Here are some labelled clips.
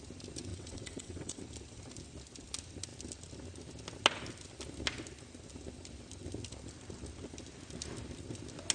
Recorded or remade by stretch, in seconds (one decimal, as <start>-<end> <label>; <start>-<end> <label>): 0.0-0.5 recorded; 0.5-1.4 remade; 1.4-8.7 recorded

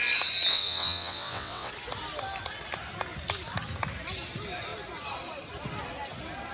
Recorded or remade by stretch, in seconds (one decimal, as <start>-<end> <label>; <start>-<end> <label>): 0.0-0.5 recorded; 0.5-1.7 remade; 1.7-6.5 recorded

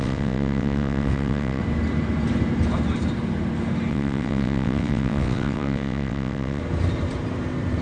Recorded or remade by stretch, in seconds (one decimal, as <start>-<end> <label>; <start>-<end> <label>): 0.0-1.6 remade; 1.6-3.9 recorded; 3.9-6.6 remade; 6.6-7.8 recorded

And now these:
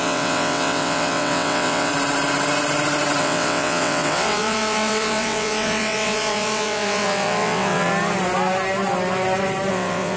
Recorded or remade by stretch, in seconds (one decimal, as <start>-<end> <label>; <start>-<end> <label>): 0.0-1.9 remade; 1.9-3.2 recorded; 3.2-7.9 remade; 7.9-9.7 recorded; 9.7-10.2 remade

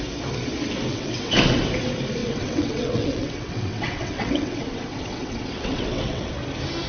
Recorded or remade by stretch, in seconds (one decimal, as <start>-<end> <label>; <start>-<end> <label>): 0.0-0.9 recorded; 0.9-1.6 remade; 1.6-2.2 recorded; 2.2-6.3 remade; 6.3-6.9 recorded

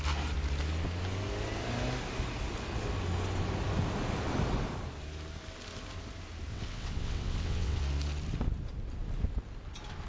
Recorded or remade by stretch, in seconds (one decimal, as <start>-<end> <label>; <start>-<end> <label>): 0.0-6.5 recorded; 6.5-7.8 remade; 7.8-10.1 recorded

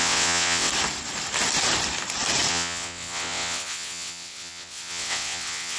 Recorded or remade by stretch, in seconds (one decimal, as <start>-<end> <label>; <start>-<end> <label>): 0.0-0.7 remade; 0.7-2.5 recorded; 2.5-5.8 remade